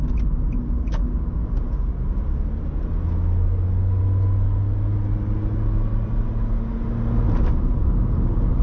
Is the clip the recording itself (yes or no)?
yes